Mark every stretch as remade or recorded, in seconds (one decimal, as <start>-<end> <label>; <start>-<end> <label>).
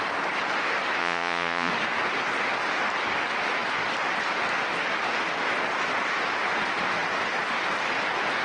0.0-1.0 recorded; 1.0-1.7 remade; 1.7-8.4 recorded